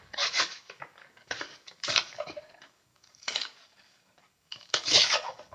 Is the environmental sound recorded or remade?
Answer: remade